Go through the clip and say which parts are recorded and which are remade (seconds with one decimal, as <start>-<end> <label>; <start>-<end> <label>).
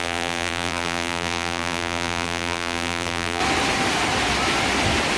0.0-3.4 remade; 3.4-5.2 recorded